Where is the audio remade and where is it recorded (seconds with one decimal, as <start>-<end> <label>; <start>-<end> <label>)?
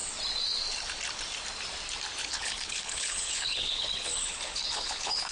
0.0-2.2 recorded; 2.2-5.3 remade